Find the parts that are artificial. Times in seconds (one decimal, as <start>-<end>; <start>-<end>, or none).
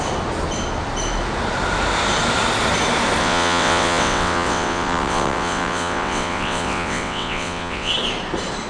3.2-7.9